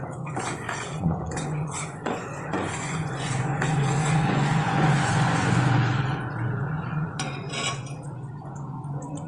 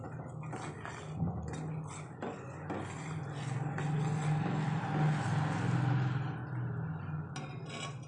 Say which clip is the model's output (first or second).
first